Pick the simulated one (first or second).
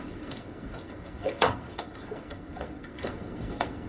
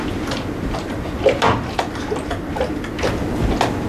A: first